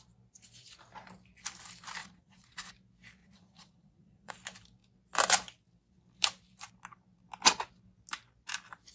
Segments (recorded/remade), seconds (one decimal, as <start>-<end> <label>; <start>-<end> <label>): 0.0-2.0 recorded; 2.0-2.7 remade; 2.7-3.2 recorded; 3.2-4.3 remade; 4.3-8.9 recorded